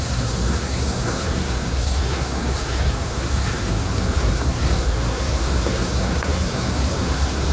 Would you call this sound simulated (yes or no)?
yes